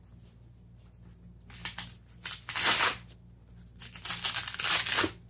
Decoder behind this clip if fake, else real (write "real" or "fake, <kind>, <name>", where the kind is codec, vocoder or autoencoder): real